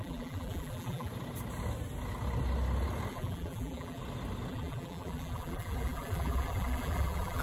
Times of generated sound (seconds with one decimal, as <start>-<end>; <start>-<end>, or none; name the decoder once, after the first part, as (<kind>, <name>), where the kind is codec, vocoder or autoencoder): 0.0-1.1 (vocoder, BigVGAN v2); 3.1-4.0; 4.5-7.4